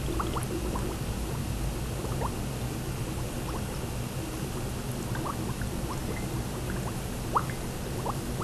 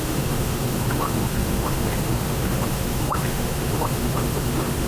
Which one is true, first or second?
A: first